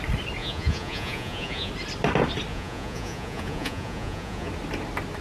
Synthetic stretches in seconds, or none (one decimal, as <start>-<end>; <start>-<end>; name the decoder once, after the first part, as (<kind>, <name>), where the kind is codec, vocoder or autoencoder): 0.4-1.7 (vocoder, Vocos); 2.5-4.5